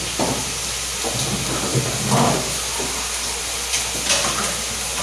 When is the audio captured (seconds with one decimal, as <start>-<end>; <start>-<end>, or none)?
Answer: 0.0-5.0